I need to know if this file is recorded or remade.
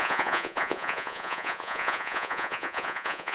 remade